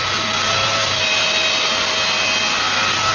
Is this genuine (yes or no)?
yes